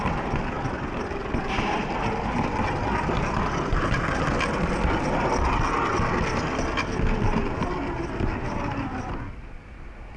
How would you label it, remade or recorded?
recorded